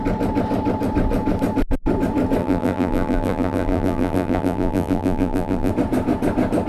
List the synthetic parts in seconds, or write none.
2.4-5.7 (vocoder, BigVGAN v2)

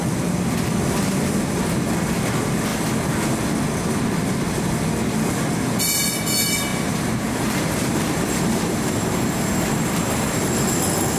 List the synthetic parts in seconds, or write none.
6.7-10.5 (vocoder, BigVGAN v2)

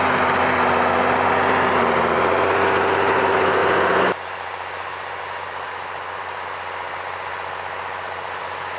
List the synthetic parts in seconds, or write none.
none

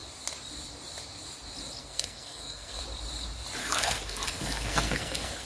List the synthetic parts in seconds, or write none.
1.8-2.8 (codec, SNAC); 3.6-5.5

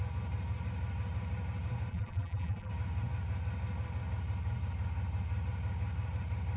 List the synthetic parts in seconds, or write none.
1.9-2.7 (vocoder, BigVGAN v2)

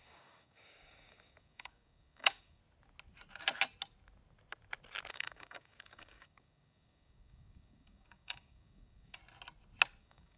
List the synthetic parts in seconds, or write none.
0.0-2.6 (codec, DAC); 5.1-9.2; 10.0-10.4

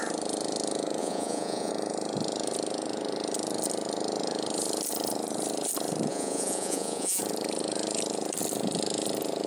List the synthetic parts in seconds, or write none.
1.0-1.7 (vocoder, Vocos); 6.1-7.2

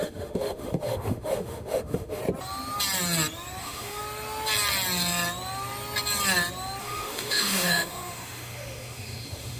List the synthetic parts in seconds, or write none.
0.0-2.2 (autoencoder, DAC-VAE); 3.6-4.0; 6.8-9.6